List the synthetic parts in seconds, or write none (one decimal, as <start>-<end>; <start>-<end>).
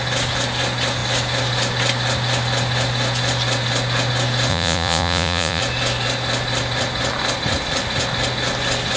4.5-5.6